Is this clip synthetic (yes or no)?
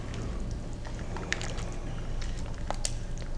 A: no